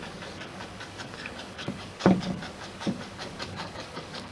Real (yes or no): no